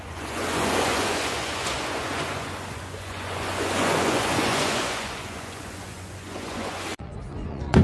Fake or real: fake